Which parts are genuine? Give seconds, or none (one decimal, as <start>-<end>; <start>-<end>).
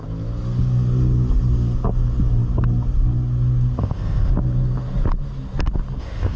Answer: 0.0-3.8; 4.3-6.0